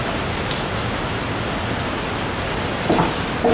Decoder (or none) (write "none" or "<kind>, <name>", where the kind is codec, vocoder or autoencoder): none